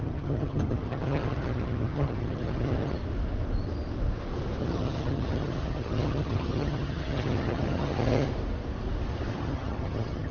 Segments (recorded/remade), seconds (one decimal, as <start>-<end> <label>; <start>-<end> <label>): 0.0-3.0 remade; 3.0-4.6 recorded; 4.6-8.3 remade; 8.3-9.4 recorded; 9.4-10.3 remade

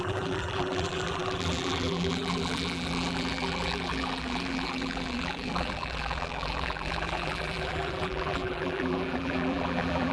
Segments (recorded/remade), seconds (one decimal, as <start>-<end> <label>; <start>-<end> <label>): 0.0-10.1 remade

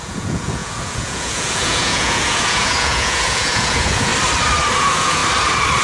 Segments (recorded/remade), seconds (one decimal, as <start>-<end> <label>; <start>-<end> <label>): 0.0-4.1 remade; 4.1-4.8 recorded; 4.8-5.2 remade; 5.2-5.8 recorded

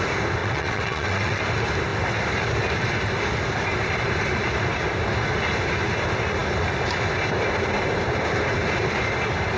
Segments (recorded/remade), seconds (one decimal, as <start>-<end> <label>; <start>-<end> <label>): 0.0-0.4 recorded; 0.4-1.4 remade; 1.4-9.6 recorded

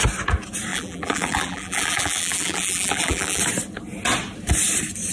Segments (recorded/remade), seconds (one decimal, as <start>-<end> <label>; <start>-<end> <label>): 0.0-0.7 recorded; 0.7-3.4 remade; 3.4-5.1 recorded